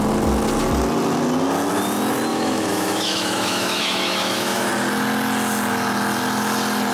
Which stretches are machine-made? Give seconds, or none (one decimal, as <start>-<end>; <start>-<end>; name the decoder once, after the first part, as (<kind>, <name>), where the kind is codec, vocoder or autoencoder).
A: 2.3-4.7 (autoencoder, DAC-VAE)